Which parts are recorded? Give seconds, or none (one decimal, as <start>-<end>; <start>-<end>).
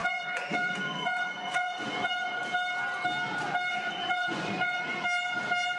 2.4-3.7; 5.0-5.8